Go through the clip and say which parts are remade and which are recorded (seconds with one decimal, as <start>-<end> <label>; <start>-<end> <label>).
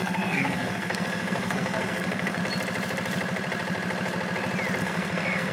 0.0-2.4 remade; 2.4-4.8 recorded; 4.8-5.5 remade